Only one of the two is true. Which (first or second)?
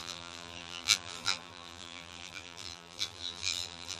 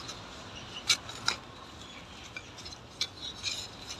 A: second